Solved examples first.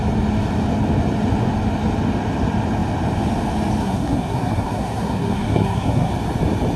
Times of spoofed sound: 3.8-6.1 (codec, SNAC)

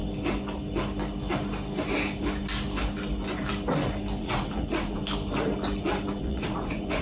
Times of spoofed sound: 4.2-5.0 (vocoder, Vocos); 6.2-7.0

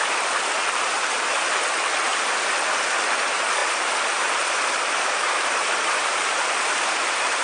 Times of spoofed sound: 3.6-7.4 (vocoder, BigVGAN v2)